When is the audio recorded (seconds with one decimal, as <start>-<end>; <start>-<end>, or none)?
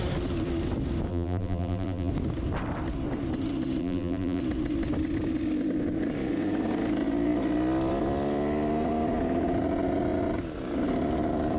0.0-1.1; 2.1-3.8; 4.4-11.6